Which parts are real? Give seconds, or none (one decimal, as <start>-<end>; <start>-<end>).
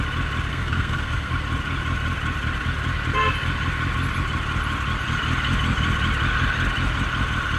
0.0-0.5; 1.3-7.6